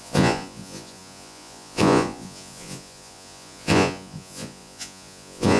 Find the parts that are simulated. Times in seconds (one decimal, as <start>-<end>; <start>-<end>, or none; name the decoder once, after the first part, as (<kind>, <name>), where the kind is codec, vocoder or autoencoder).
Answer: 0.0-5.6 (vocoder, Vocos)

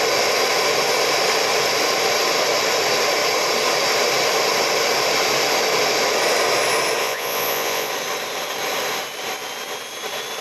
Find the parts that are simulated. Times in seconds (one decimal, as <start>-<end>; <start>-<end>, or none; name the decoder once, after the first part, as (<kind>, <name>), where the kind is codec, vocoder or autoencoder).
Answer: 7.0-7.9 (vocoder, Vocos)

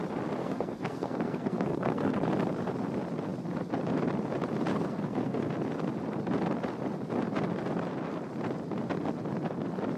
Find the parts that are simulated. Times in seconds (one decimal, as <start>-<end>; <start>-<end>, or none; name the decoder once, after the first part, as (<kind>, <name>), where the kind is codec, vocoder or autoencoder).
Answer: 0.4-2.3 (codec, SNAC); 4.7-5.5

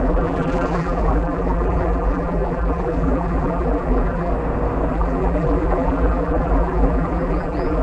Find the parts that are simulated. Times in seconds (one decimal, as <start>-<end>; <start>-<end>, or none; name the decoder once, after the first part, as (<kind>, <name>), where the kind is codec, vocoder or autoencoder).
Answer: 0.0-4.3 (vocoder, BigVGAN v2); 4.9-7.8

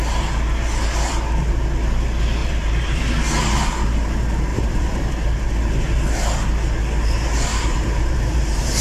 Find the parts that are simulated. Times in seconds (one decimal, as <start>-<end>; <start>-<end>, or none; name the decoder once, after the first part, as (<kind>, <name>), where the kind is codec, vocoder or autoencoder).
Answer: 2.4-3.0 (vocoder, BigVGAN v2); 4.5-5.1; 7.5-8.8

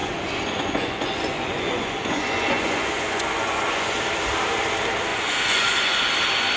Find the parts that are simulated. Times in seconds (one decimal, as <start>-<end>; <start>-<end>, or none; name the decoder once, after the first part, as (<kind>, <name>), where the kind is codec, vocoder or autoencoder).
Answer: 0.0-4.0 (vocoder, Vocos); 5.1-6.1

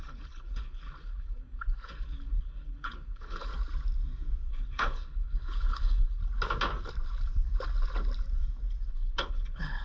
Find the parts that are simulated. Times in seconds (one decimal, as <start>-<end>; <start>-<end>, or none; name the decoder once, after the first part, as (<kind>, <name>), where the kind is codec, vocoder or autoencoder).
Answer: 0.0-3.5 (codec, HILCodec); 4.5-6.2; 8.9-9.8